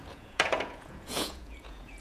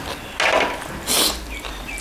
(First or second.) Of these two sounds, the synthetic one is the first